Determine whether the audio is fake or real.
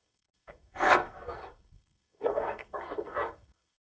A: fake